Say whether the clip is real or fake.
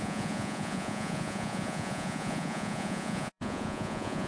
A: fake